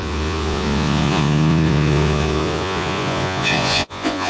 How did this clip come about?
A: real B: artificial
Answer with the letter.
B